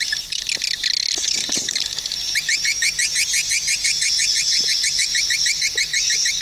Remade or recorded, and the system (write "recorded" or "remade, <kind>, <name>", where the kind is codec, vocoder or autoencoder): recorded